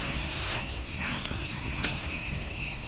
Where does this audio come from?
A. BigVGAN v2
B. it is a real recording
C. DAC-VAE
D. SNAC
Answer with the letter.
D